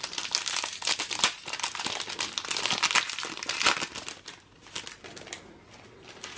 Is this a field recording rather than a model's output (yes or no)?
yes